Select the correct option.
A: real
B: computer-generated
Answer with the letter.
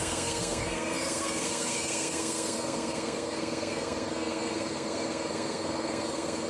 B